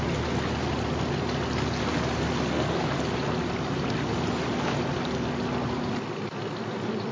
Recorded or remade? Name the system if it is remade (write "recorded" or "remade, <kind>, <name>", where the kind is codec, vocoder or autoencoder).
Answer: recorded